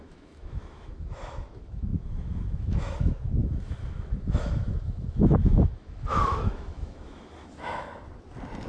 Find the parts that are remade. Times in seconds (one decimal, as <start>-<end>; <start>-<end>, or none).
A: 0.0-7.9